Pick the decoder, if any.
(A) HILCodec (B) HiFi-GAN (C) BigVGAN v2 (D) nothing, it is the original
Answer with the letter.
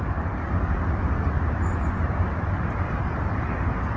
C